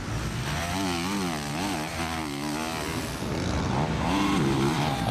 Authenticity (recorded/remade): recorded